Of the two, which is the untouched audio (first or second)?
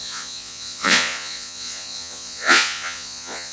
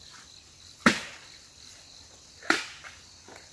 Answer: second